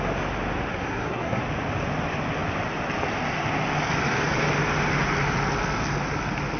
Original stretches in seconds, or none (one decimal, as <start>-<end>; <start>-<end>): 0.0-0.7; 1.4-6.6